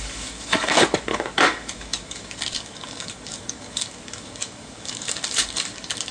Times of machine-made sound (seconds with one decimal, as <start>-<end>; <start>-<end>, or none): 0.0-6.1